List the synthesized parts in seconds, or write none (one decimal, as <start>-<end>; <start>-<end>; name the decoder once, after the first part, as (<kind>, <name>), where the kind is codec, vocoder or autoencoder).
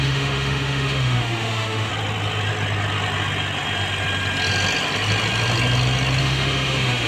0.0-1.9 (autoencoder, DAC-VAE); 6.2-7.1